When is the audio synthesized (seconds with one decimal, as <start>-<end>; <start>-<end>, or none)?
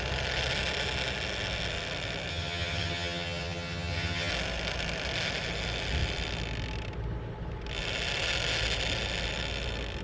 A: 2.3-4.3